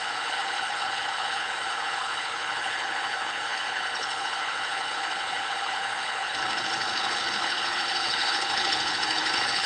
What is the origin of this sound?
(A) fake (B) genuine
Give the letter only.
A